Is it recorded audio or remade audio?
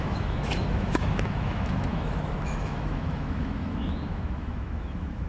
remade